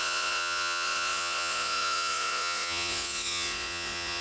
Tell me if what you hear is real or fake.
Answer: fake